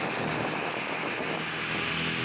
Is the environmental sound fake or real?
real